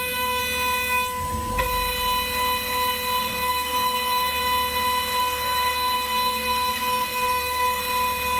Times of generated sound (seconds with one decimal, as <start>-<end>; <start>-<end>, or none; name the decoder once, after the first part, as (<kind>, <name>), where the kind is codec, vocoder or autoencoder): 0.0-0.4 (codec, SNAC); 3.2-4.4; 5.2-7.8